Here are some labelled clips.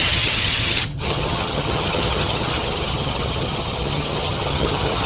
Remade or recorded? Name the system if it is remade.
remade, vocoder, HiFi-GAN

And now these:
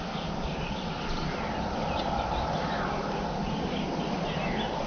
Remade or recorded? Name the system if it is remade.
recorded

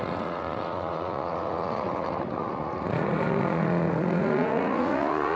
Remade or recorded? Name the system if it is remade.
remade, vocoder, Vocos